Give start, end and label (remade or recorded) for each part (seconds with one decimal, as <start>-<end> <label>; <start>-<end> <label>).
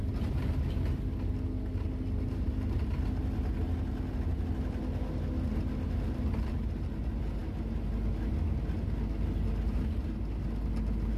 0.0-11.2 recorded